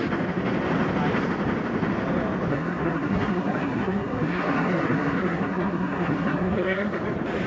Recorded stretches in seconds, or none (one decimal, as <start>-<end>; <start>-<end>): 0.0-2.5; 7.0-7.5